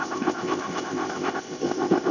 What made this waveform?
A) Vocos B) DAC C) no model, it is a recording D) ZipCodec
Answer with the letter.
D